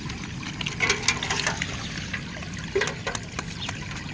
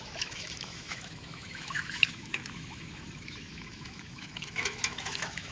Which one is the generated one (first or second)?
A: second